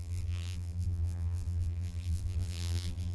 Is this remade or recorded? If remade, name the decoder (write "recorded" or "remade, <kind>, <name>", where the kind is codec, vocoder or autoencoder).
remade, vocoder, BigVGAN v2